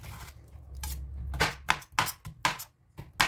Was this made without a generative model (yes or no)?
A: yes